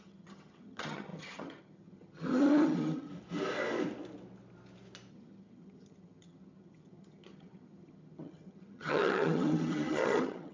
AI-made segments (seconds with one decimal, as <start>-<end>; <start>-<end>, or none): 0.0-3.1; 5.1-10.5